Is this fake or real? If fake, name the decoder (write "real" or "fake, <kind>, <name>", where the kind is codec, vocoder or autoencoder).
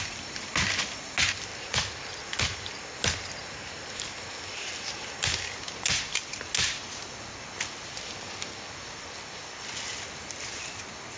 real